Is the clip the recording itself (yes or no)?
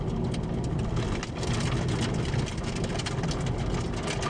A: yes